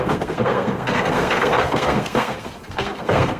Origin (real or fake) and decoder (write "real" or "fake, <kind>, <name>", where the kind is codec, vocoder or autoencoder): fake, codec, SNAC